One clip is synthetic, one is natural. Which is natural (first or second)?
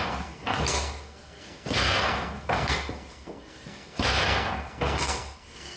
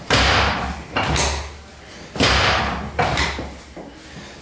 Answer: second